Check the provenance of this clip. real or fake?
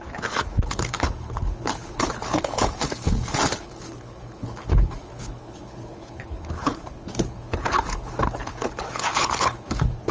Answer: fake